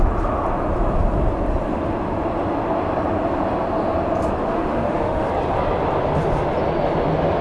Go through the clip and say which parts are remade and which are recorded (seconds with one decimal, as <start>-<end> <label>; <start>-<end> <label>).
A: 0.0-4.4 recorded; 4.4-5.3 remade; 5.3-7.4 recorded